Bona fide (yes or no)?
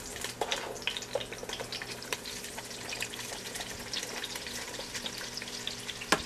yes